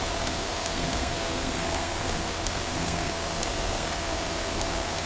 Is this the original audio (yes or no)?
no